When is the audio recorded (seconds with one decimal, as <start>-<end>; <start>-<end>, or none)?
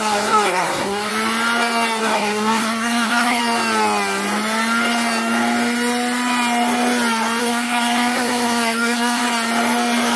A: 1.1-2.0; 3.4-7.4; 9.2-10.2